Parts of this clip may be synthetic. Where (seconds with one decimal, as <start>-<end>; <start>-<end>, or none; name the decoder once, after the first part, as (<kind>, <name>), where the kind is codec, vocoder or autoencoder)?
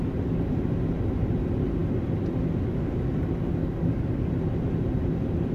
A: 3.6-4.3 (codec, DAC)